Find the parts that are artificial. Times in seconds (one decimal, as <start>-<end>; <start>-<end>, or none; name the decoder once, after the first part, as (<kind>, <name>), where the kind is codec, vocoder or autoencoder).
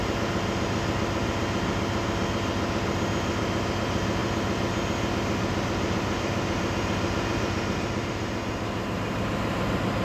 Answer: none